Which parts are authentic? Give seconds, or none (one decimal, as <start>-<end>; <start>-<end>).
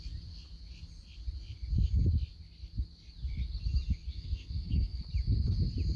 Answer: 0.0-4.1; 5.0-6.0